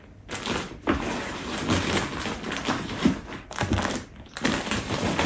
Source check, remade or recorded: recorded